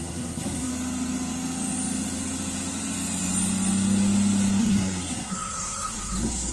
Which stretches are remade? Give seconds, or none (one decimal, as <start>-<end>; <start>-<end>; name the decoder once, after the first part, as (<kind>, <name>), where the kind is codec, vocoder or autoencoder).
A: 0.0-0.7 (codec, SNAC); 4.6-6.5